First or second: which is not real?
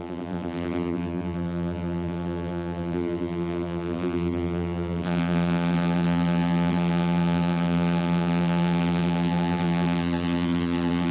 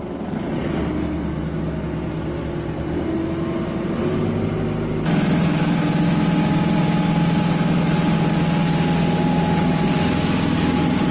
first